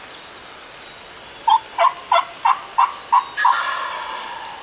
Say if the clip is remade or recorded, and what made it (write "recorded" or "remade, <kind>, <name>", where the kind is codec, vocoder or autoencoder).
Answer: recorded